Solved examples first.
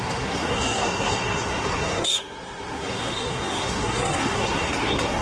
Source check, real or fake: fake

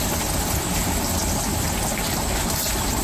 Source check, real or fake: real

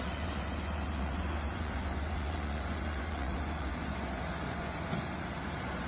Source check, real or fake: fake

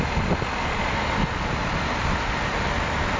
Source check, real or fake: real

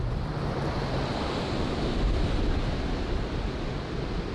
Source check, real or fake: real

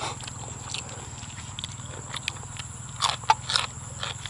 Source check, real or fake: real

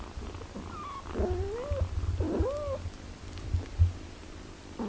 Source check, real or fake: real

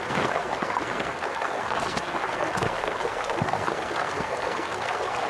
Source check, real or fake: fake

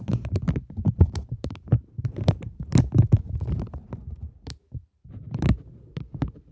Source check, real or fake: fake